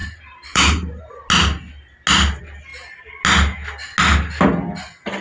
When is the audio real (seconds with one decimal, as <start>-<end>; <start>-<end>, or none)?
1.0-5.2

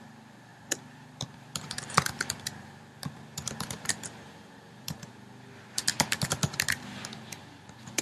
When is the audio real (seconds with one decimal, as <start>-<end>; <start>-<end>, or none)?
0.0-0.5; 5.1-8.0

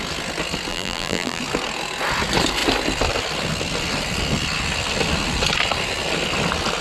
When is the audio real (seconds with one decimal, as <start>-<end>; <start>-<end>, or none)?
0.0-0.7; 1.4-6.8

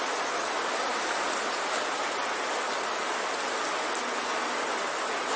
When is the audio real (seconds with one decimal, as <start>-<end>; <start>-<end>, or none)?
0.0-0.9; 2.2-5.4

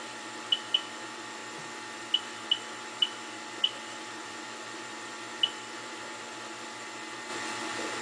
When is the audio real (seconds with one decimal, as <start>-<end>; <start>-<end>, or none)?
1.4-2.2